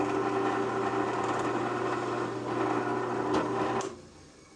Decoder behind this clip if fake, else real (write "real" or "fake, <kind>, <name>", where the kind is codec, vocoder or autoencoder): real